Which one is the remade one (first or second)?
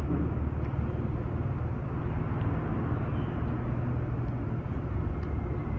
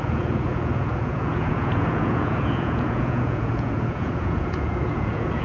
second